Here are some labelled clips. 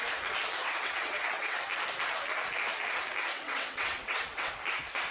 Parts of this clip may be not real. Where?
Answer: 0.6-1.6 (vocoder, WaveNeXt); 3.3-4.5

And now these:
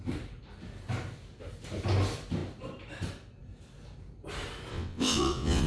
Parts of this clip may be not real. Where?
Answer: 4.7-5.7 (vocoder, WaveNeXt)

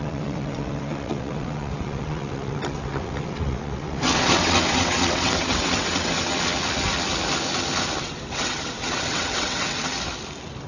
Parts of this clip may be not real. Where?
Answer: 0.0-6.3 (vocoder, WaveNeXt); 8.0-9.9

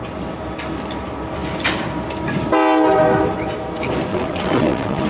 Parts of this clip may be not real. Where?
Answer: 4.1-5.1 (vocoder, WaveNeXt)

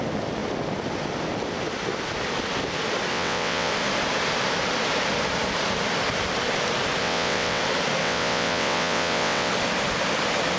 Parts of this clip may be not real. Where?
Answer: 3.1-3.7 (vocoder, WaveNeXt); 7.0-7.6; 8.0-9.5

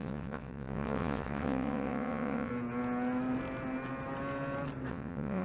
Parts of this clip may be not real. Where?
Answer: 0.0-2.5 (vocoder, WaveNeXt); 4.9-5.4